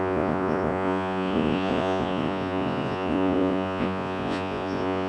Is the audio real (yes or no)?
no